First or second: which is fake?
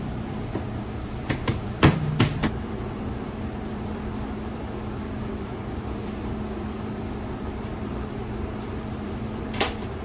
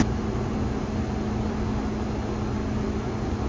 first